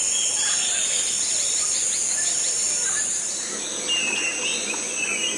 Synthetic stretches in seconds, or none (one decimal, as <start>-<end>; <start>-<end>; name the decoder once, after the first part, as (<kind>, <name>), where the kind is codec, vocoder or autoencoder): 4.5-5.4 (vocoder, Vocos)